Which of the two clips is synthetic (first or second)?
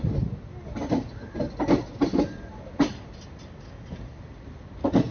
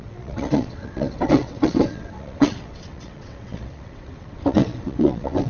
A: second